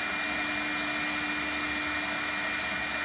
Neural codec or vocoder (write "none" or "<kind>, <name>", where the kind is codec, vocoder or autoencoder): none